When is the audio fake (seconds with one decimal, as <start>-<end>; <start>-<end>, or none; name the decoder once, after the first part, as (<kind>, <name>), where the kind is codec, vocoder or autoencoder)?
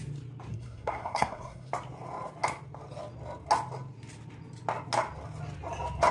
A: 0.5-1.7 (codec, SNAC)